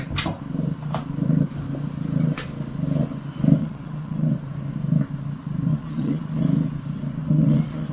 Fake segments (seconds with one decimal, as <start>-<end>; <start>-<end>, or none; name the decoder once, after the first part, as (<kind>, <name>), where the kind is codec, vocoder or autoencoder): 3.6-4.3 (vocoder, Vocos); 5.7-6.4; 7.2-7.9